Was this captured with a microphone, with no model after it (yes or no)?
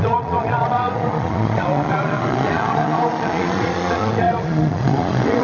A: no